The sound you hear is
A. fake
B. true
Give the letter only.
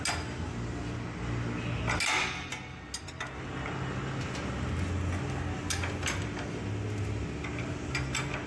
B